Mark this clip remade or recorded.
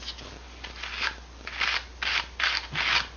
recorded